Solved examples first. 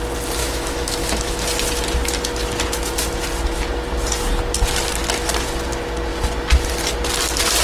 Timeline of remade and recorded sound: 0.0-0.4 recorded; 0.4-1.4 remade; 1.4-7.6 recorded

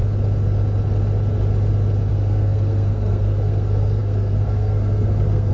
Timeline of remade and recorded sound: 0.0-2.1 recorded; 2.1-5.5 remade

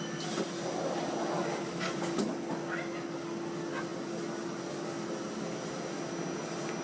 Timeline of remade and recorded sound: 0.0-6.8 recorded

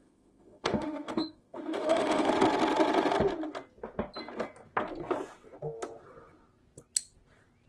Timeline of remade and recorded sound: 0.0-2.3 remade; 2.3-7.7 recorded

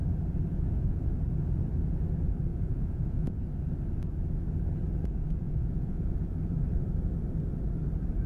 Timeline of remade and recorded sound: 0.0-0.5 recorded; 0.5-1.1 remade; 1.1-2.5 recorded; 2.5-3.4 remade; 3.4-5.4 recorded; 5.4-6.1 remade; 6.1-8.3 recorded

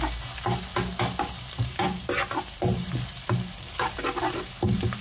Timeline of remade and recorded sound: 0.0-5.0 recorded

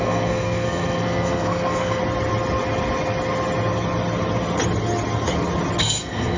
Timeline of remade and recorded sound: 0.0-2.0 remade; 2.0-5.8 recorded; 5.8-6.4 remade